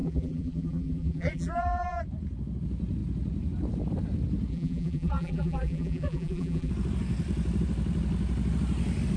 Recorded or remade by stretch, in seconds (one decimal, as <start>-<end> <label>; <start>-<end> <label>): 0.0-2.0 remade; 2.0-4.5 recorded; 4.5-6.7 remade; 6.7-9.2 recorded